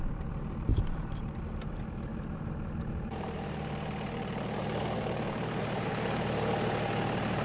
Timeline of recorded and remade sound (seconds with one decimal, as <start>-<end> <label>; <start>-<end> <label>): 0.0-0.7 recorded; 0.7-1.4 remade; 1.4-2.1 recorded; 2.1-5.9 remade; 5.9-7.4 recorded